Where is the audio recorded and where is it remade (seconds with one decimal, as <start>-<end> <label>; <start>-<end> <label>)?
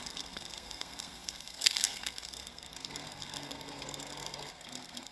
0.0-5.1 remade